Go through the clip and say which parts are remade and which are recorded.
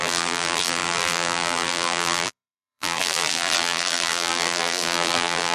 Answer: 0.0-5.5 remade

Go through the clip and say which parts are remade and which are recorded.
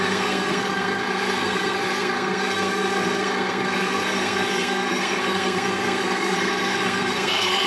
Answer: 0.0-7.7 remade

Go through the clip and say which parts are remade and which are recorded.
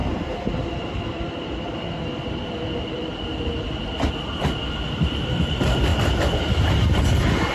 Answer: 0.0-7.5 recorded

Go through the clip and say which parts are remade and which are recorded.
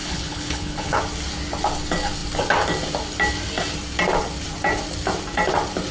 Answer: 0.0-1.0 remade; 1.0-5.9 recorded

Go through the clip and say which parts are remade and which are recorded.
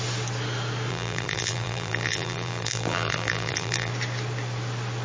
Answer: 0.0-0.9 recorded; 0.9-3.9 remade; 3.9-5.0 recorded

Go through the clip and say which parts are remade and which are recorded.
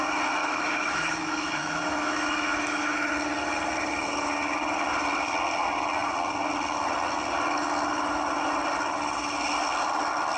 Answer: 0.0-0.4 recorded; 0.4-3.1 remade; 3.1-10.4 recorded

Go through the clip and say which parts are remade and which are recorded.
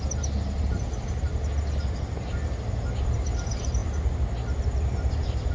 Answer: 0.0-5.5 recorded